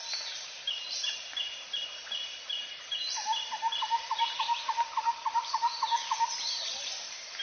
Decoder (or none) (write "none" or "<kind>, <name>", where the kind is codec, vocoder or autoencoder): vocoder, BigVGAN v2